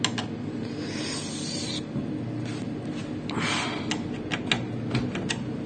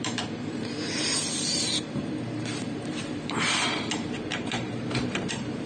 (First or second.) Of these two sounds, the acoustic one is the first